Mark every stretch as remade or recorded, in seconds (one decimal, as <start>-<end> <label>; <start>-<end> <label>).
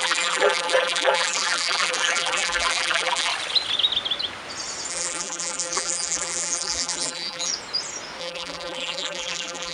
0.0-3.3 remade; 3.3-4.9 recorded; 4.9-7.5 remade; 7.5-8.2 recorded; 8.2-9.7 remade